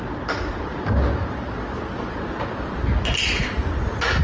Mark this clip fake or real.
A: real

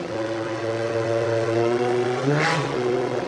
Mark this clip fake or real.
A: fake